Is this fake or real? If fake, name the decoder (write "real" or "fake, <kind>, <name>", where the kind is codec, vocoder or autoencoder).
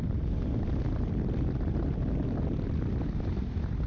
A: fake, vocoder, BigVGAN v2